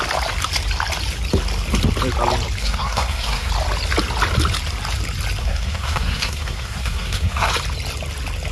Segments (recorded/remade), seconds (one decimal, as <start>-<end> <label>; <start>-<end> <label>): 0.0-2.6 recorded; 2.6-3.5 remade; 3.5-5.4 recorded; 5.4-7.5 remade; 7.5-8.5 recorded